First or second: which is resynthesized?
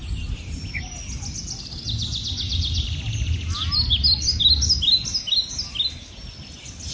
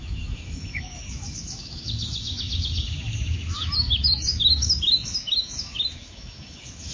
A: second